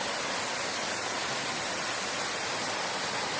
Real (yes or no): yes